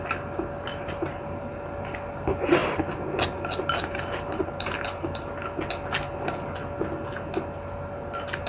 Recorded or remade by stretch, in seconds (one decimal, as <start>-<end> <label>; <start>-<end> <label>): 0.0-8.5 recorded